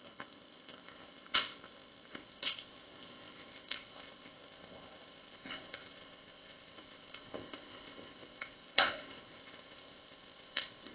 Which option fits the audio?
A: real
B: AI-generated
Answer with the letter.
B